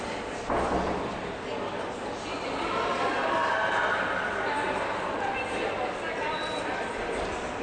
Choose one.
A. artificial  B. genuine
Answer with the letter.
B